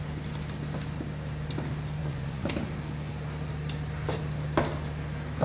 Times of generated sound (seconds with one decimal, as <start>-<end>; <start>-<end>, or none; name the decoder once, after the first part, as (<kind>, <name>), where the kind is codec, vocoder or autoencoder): 2.0-2.5 (vocoder, Vocos)